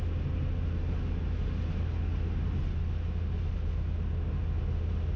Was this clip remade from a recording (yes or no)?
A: no